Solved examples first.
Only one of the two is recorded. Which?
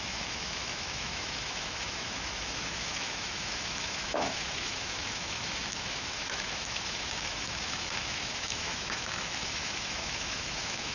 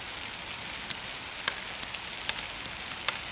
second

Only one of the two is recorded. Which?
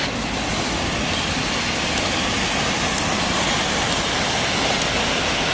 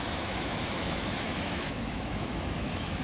first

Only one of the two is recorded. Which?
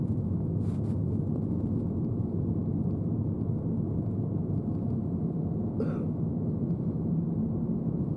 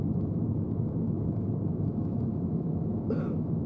first